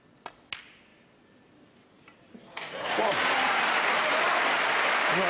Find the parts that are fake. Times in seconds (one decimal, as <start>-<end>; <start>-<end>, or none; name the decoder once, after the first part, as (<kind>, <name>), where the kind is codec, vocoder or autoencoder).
0.9-4.1 (vocoder, BigVGAN v2)